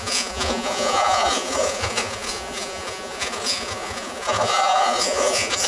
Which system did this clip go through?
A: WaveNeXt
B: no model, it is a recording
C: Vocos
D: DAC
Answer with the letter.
C